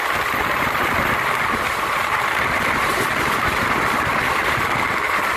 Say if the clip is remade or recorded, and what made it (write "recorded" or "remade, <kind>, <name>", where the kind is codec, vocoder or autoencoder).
recorded